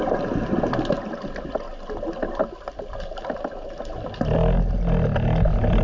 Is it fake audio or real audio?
real